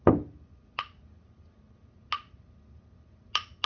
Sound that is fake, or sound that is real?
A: real